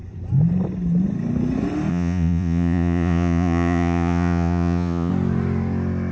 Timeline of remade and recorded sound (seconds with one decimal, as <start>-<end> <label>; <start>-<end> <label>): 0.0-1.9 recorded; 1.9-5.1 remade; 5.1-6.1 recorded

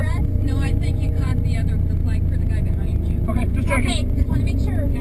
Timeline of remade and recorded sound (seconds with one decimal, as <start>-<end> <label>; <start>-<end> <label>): 0.0-1.3 remade; 1.3-2.6 recorded; 2.6-5.0 remade

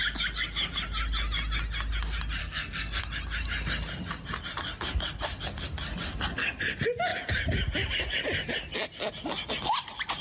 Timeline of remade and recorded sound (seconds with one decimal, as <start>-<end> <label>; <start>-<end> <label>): 0.0-2.4 recorded; 2.4-3.0 remade; 3.0-10.2 recorded

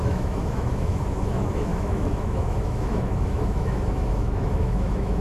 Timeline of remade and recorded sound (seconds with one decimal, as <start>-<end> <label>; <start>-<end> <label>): 0.0-5.2 remade

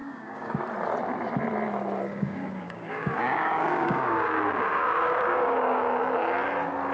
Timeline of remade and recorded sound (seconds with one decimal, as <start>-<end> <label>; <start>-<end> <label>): 0.0-0.6 remade; 0.6-2.1 recorded; 2.1-6.1 remade; 6.1-6.9 recorded

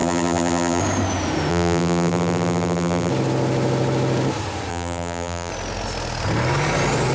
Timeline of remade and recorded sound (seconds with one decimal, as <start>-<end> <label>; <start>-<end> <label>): 0.0-0.8 remade; 0.8-1.5 recorded; 1.5-3.1 remade; 3.1-4.7 recorded; 4.7-5.5 remade; 5.5-7.1 recorded

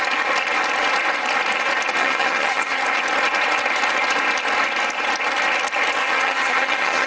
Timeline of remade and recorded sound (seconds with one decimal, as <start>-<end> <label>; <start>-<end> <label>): 0.0-2.0 recorded; 2.0-2.8 remade; 2.8-6.0 recorded; 6.0-7.1 remade